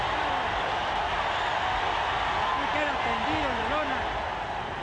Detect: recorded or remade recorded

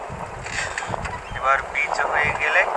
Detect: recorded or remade recorded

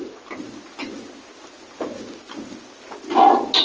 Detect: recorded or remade recorded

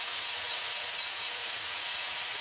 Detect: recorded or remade remade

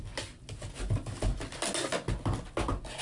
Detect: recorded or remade recorded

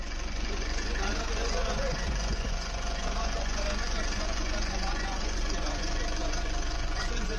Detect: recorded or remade remade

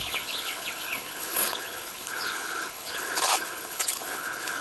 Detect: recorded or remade remade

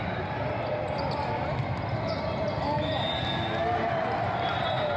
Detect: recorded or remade recorded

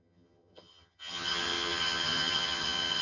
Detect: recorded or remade remade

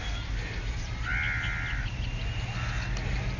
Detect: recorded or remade recorded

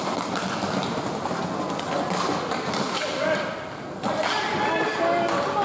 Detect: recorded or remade recorded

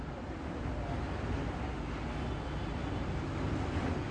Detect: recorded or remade recorded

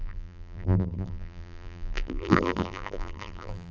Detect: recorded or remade remade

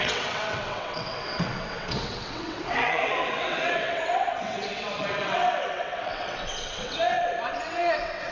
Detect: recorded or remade remade